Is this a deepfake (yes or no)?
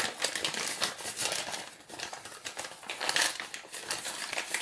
no